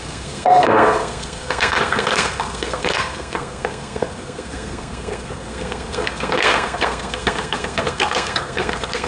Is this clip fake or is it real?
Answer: fake